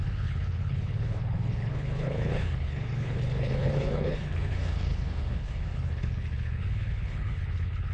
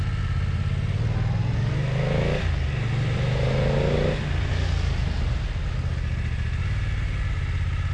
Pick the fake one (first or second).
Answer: first